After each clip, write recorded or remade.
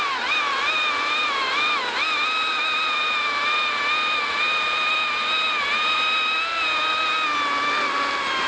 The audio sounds recorded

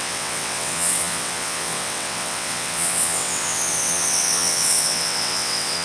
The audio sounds remade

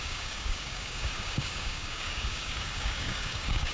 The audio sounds remade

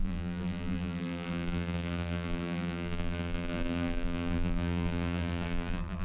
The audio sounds remade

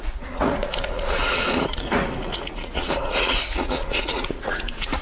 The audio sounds remade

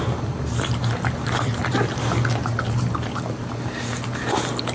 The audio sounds recorded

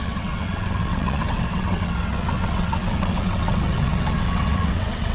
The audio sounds remade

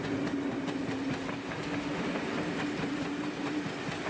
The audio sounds recorded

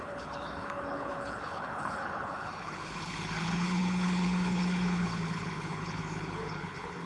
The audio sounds remade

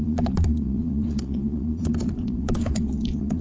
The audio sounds remade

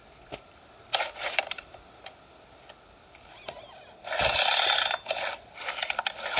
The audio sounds recorded